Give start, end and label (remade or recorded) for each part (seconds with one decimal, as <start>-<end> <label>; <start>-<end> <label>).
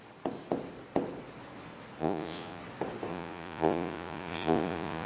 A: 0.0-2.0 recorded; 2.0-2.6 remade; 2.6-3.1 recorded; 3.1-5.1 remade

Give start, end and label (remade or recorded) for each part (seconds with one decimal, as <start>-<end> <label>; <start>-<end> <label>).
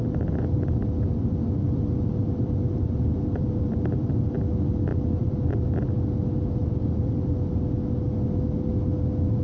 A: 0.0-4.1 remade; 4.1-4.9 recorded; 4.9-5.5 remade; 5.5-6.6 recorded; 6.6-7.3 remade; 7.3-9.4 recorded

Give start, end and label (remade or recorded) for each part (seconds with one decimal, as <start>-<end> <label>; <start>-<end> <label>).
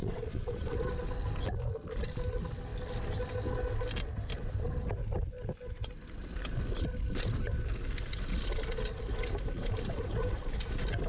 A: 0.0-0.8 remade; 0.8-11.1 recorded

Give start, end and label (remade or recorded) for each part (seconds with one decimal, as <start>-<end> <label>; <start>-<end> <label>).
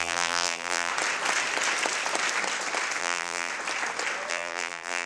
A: 0.0-0.9 remade; 0.9-3.0 recorded; 3.0-3.5 remade; 3.5-4.3 recorded; 4.3-5.1 remade